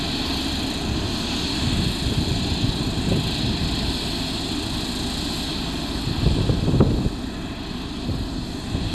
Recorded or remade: recorded